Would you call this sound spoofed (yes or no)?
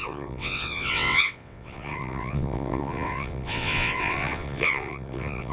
yes